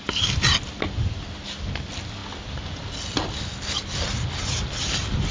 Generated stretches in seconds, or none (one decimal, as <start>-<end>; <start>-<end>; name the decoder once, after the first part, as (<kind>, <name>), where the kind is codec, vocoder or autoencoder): none